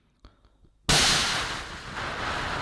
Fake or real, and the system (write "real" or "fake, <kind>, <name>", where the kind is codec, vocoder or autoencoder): real